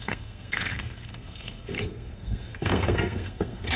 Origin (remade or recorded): remade